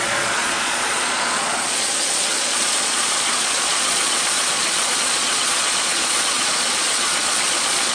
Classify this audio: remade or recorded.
remade